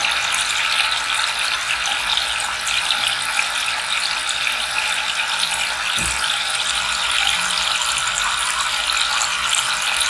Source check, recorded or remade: recorded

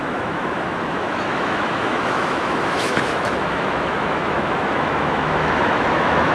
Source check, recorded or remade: remade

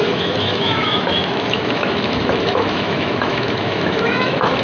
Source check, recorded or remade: remade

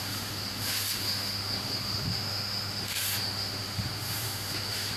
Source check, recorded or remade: remade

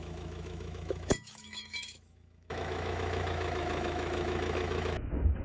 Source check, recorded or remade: remade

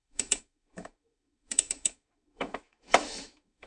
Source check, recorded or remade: remade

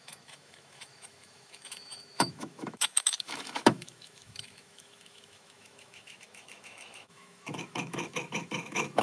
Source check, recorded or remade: remade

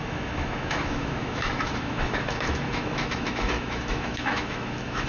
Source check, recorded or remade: remade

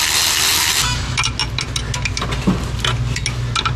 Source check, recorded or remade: recorded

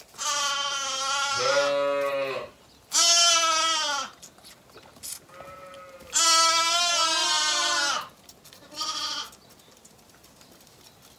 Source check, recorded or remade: recorded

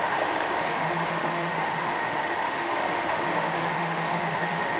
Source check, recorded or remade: remade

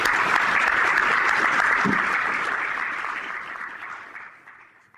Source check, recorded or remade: recorded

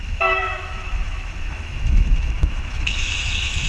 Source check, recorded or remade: remade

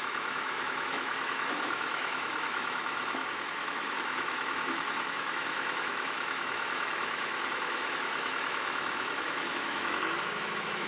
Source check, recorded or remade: remade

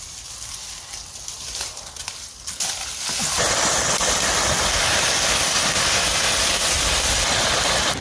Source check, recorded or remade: recorded